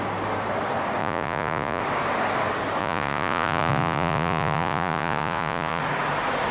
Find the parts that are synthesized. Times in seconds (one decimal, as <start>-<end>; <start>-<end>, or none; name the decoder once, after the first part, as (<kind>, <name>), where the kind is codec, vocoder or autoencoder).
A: 1.0-1.8 (vocoder, Vocos); 2.8-5.8